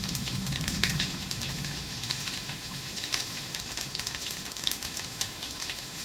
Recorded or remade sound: remade